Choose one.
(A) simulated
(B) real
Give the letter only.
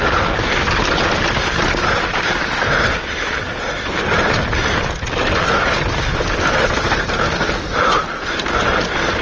B